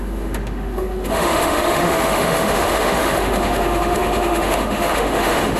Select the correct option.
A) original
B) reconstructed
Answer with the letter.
B